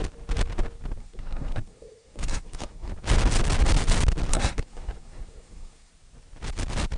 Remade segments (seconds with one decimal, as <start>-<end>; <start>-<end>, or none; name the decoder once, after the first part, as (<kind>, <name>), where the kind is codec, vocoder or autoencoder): 1.0-2.9 (codec, SNAC); 4.3-5.9